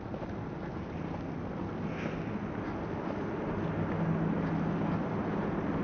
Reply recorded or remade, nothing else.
recorded